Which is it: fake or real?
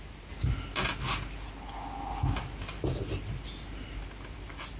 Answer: real